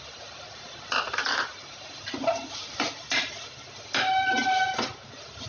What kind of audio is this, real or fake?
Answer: real